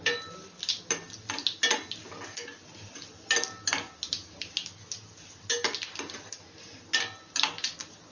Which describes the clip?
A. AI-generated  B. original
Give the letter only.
B